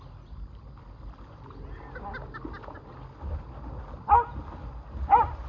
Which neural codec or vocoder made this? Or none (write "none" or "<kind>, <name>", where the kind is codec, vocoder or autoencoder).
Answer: none